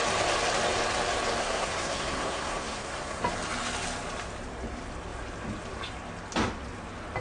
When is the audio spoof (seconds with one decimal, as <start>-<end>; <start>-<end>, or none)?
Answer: 1.4-3.2